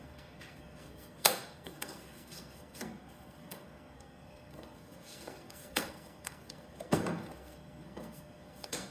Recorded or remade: remade